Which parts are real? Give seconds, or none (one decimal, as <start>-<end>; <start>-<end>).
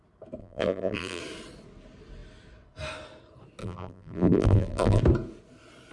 0.0-0.4; 1.2-3.6; 5.0-5.9